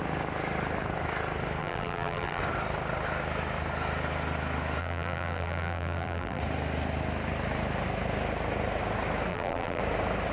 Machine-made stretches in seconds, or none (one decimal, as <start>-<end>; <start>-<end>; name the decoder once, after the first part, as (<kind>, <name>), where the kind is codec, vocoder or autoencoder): 1.6-2.4 (vocoder, BigVGAN v2); 4.8-6.4; 9.3-9.8

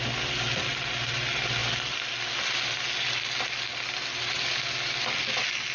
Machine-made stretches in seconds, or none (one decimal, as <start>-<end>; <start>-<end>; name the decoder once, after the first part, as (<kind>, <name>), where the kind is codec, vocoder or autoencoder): none

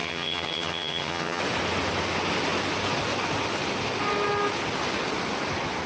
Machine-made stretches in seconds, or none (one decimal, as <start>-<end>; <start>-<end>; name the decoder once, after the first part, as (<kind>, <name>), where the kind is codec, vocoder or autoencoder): 0.0-1.4 (vocoder, HiFi-GAN)

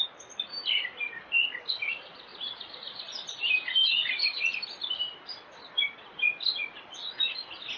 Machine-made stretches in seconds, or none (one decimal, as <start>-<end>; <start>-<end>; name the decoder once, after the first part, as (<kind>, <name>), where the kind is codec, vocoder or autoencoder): none

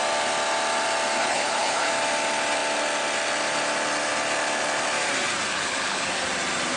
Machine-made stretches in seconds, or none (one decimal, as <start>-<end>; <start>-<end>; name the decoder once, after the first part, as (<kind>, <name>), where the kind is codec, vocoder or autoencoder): 1.2-1.9 (codec, HILCodec); 5.5-6.1

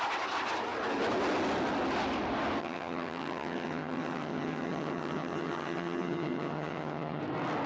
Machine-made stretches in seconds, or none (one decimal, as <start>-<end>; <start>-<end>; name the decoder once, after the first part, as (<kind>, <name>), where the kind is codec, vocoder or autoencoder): 2.6-7.2 (vocoder, HiFi-GAN)

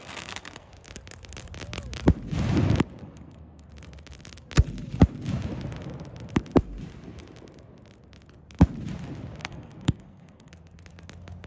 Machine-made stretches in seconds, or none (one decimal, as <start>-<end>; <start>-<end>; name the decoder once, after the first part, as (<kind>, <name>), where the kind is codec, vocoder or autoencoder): 0.0-0.7 (codec, SNAC); 3.0-3.7; 9.4-10.5